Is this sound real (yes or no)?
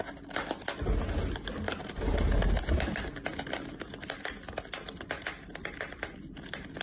yes